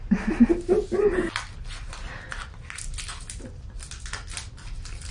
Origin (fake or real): real